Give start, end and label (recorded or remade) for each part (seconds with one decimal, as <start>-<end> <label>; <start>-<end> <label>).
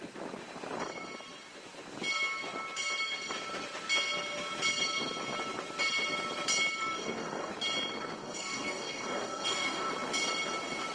0.0-6.8 recorded; 6.8-7.5 remade; 7.5-8.2 recorded; 8.2-9.9 remade; 9.9-10.9 recorded